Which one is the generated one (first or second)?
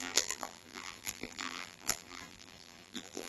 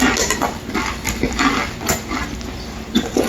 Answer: first